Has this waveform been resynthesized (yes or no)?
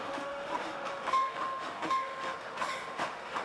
yes